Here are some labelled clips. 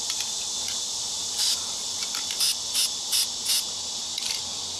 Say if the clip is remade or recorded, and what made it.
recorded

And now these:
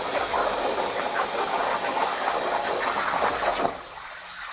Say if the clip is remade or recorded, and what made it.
recorded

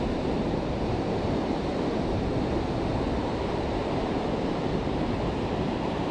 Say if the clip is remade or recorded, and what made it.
remade, vocoder, BigVGAN v2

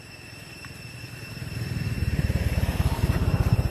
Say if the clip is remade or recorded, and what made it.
remade, vocoder, BigVGAN v2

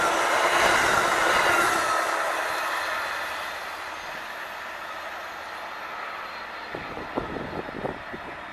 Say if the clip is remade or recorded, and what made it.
recorded